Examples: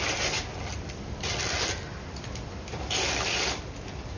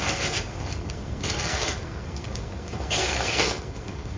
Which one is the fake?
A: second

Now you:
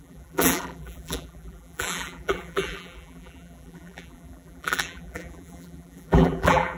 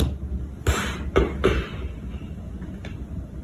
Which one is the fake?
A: first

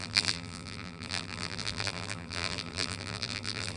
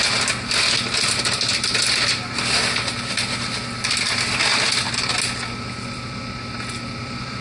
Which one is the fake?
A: first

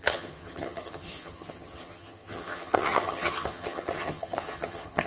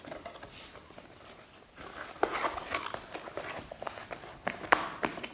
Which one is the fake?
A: first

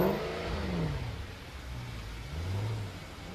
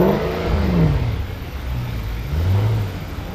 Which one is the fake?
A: second